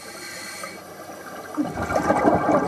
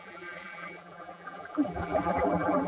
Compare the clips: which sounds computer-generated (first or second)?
second